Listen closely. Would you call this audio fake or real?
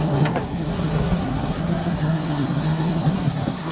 fake